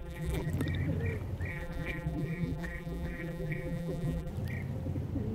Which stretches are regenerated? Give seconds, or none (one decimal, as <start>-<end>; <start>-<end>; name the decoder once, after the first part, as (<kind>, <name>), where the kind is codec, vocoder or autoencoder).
0.0-0.5 (vocoder, BigVGAN v2); 1.5-4.3